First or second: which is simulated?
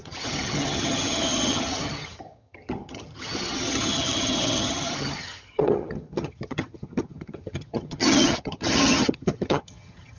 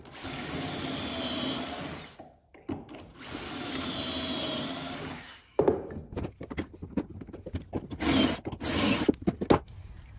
first